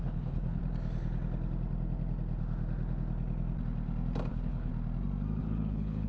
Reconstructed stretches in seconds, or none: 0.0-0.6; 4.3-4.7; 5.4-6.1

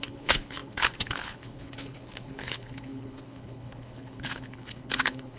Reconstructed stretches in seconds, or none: 0.0-5.4

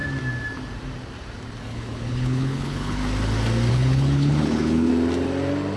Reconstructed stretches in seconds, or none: 1.6-3.0; 3.7-4.9

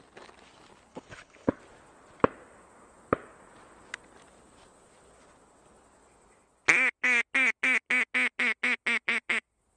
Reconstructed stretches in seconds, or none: 0.9-1.6

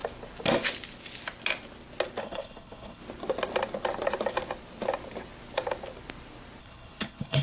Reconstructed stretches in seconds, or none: 2.2-3.0; 6.6-7.4

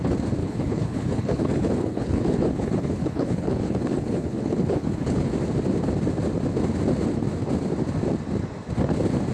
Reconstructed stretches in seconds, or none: 0.4-5.3